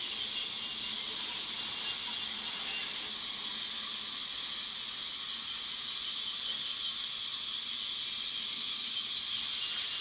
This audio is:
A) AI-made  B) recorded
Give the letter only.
B